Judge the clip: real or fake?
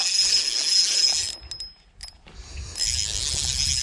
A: real